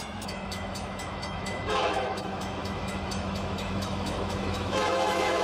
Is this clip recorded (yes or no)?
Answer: no